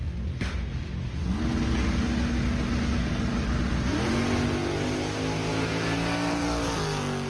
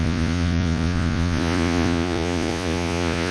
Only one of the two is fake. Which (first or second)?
second